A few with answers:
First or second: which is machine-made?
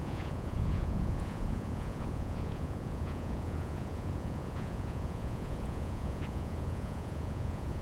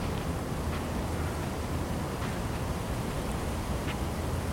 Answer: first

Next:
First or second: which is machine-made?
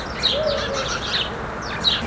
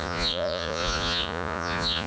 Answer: second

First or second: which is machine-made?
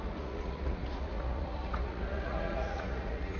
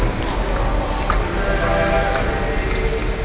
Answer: first